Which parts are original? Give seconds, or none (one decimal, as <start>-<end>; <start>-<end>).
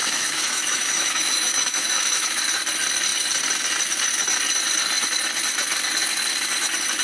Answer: 2.4-7.0